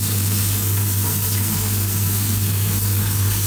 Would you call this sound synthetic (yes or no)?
yes